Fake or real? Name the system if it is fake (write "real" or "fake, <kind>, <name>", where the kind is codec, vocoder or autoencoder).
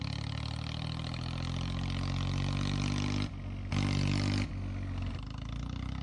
real